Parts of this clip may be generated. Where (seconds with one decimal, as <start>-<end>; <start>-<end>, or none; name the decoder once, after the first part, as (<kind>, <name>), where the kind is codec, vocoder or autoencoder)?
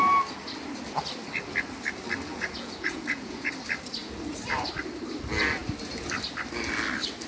2.3-3.5 (vocoder, Vocos)